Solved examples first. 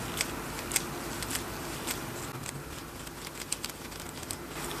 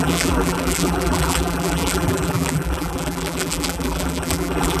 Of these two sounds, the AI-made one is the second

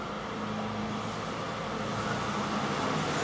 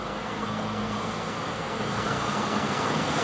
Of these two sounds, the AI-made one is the second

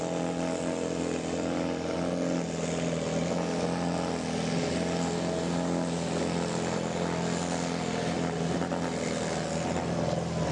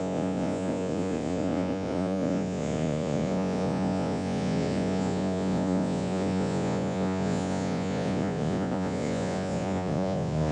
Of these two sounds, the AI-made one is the second